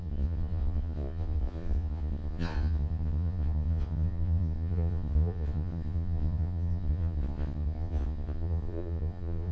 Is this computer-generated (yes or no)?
yes